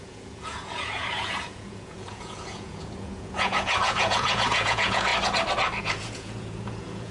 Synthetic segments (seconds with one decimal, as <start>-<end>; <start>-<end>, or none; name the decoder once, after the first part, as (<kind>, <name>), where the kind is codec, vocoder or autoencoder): 0.0-5.1 (vocoder, Vocos); 5.8-7.1